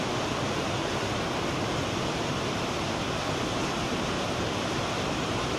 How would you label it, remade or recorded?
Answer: recorded